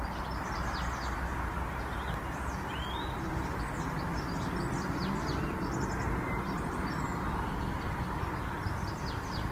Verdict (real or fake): real